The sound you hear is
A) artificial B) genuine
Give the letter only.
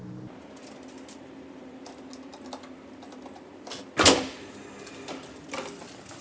B